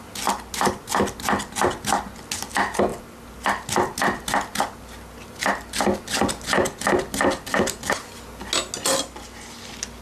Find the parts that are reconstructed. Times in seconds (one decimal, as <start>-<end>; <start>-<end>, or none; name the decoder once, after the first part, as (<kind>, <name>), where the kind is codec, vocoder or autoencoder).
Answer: none